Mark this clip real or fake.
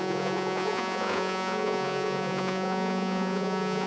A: fake